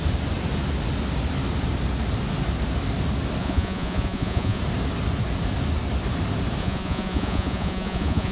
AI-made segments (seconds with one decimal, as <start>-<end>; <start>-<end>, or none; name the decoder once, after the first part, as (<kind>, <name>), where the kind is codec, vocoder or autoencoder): 3.4-4.6 (vocoder, Vocos); 6.6-8.3